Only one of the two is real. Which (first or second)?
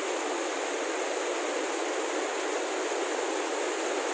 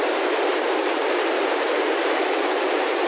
first